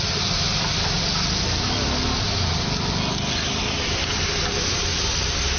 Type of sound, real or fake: real